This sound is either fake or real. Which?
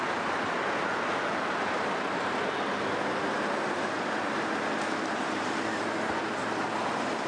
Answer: real